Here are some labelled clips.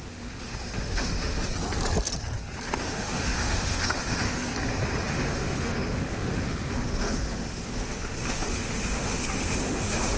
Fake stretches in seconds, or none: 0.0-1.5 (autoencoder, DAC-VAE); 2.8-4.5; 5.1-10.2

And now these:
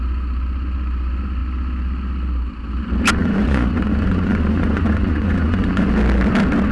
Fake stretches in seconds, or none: 3.2-5.9 (vocoder, Vocos)

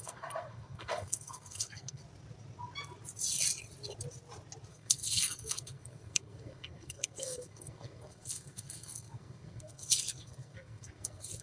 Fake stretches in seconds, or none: 0.0-2.0 (codec, SNAC); 4.7-11.4

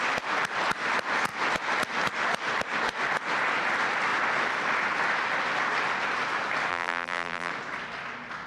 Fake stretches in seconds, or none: 6.7-7.5 (vocoder, BigVGAN v2)

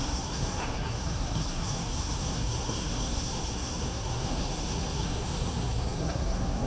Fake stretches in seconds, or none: 0.0-6.7 (codec, SNAC)

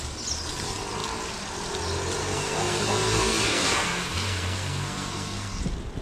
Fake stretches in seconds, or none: 2.2-5.6 (codec, SNAC)